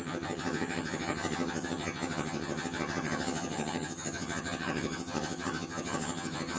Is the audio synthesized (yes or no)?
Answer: yes